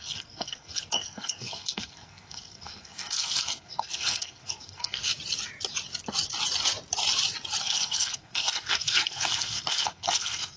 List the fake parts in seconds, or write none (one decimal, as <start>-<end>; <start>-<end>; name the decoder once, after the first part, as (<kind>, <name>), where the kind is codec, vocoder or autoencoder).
0.0-5.1 (codec, SNAC); 7.6-10.6